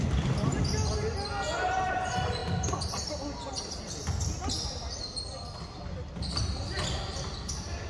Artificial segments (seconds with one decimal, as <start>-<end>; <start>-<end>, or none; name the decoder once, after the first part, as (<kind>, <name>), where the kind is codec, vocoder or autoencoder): none